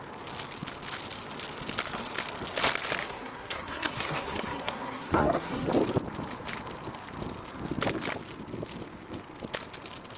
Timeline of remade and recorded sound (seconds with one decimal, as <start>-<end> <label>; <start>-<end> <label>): 0.0-3.0 recorded; 3.0-5.7 remade; 5.7-10.2 recorded